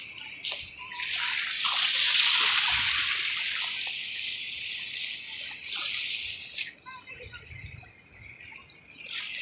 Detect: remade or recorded recorded